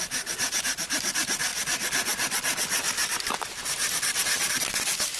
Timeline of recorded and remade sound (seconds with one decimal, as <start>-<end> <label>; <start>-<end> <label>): 0.0-5.2 recorded